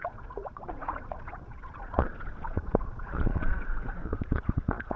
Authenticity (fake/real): fake